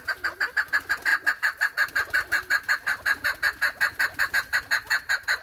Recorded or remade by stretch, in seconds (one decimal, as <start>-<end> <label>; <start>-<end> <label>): 0.0-5.4 remade